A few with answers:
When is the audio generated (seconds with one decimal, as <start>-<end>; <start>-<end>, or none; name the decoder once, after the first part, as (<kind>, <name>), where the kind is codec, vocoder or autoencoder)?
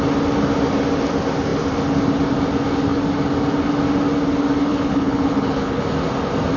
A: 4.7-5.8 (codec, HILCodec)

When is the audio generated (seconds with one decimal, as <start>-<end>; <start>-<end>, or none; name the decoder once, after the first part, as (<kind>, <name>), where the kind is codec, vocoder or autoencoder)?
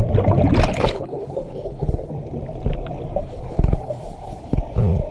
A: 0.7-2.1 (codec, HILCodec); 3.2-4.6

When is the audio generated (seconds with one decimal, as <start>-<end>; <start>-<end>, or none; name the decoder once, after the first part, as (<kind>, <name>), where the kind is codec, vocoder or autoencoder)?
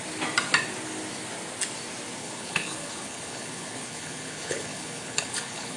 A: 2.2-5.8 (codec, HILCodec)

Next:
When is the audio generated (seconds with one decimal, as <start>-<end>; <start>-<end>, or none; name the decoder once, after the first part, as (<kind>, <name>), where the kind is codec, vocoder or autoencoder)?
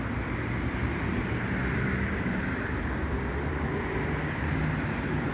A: none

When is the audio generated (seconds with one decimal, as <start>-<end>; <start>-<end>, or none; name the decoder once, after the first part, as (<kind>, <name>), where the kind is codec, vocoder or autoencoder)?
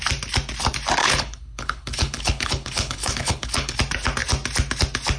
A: 1.0-3.8 (codec, HILCodec)